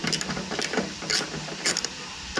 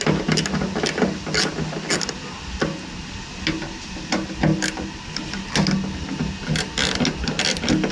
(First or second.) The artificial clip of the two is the first